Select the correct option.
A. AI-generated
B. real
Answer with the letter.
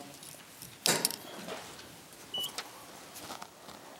B